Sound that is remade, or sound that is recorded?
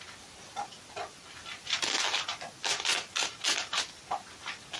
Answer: recorded